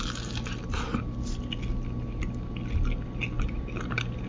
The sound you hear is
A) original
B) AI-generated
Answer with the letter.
A